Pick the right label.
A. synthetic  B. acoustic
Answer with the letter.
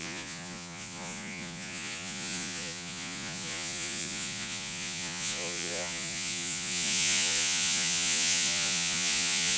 A